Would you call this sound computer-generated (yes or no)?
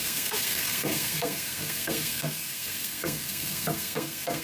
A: yes